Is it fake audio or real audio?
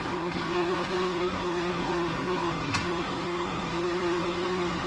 fake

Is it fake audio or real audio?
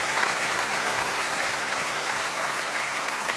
fake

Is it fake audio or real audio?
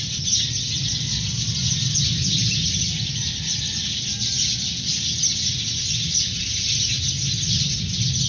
real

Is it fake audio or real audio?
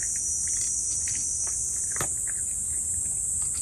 real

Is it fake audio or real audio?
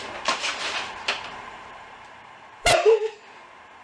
fake